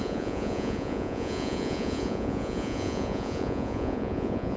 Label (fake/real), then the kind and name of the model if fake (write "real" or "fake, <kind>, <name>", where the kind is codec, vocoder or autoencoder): fake, vocoder, Vocos